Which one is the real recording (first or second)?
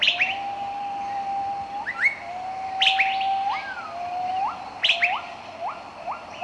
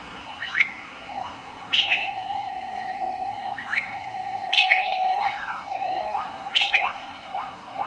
first